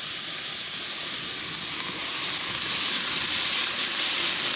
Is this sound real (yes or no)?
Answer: yes